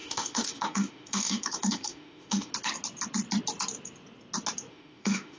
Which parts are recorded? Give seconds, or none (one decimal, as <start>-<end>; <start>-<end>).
2.5-4.7